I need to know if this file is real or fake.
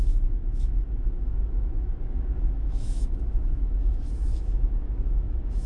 fake